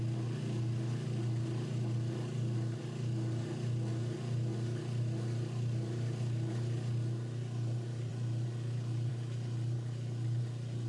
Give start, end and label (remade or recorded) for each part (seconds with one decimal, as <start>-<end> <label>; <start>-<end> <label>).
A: 0.0-10.9 recorded